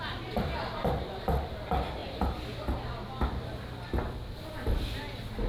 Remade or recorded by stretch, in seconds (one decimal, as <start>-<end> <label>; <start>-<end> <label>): 0.0-2.0 remade; 2.0-5.5 recorded